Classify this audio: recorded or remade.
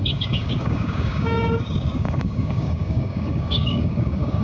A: remade